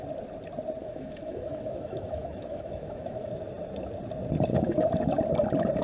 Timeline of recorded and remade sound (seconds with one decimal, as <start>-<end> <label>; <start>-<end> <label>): 0.0-0.8 recorded; 0.8-3.3 remade; 3.3-4.5 recorded; 4.5-5.1 remade; 5.1-5.8 recorded